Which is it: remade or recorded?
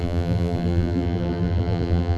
remade